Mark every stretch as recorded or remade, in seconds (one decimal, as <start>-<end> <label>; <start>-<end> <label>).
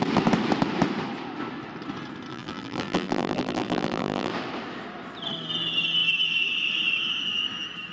0.0-2.3 recorded; 2.3-4.3 remade; 4.3-7.9 recorded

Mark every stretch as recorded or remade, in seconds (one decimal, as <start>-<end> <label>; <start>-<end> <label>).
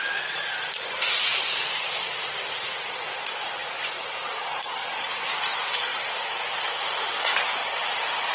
0.0-8.3 recorded